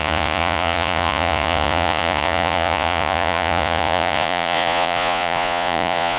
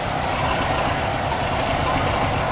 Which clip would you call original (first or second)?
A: second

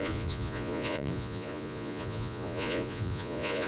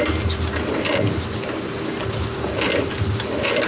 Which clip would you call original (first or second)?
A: second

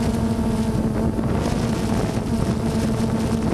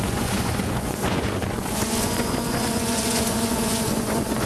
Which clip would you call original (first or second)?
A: first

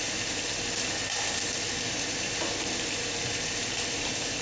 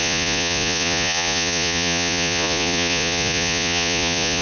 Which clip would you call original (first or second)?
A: first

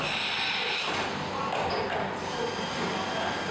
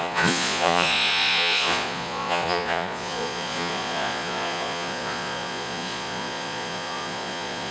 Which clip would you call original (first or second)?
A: first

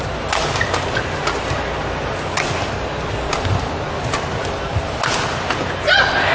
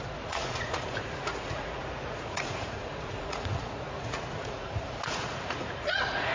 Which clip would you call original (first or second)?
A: first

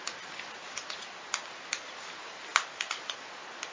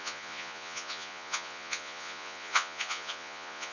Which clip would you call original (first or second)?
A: first